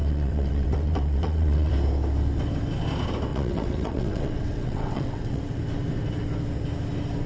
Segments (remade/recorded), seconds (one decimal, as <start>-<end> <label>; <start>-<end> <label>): 0.0-1.7 remade; 1.7-3.3 recorded; 3.3-5.6 remade; 5.6-7.3 recorded